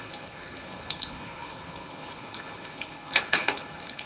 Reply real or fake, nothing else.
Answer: fake